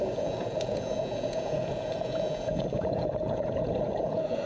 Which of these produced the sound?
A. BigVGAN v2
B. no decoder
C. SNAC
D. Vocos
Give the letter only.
D